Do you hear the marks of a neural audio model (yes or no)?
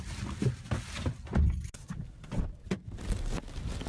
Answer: no